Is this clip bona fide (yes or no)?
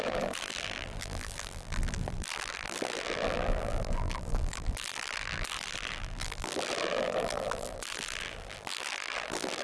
no